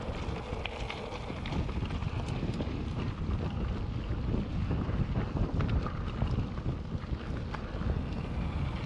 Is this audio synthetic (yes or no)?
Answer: no